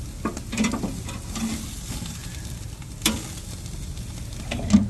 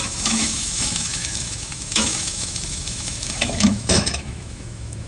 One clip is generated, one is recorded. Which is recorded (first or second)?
first